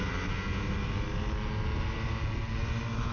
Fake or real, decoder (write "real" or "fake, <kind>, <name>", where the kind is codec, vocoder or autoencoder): real